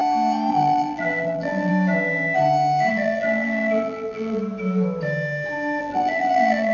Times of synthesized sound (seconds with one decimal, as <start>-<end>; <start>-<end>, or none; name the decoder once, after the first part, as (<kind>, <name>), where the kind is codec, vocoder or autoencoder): 0.5-1.7 (vocoder, BigVGAN v2); 2.9-4.4; 5.8-6.7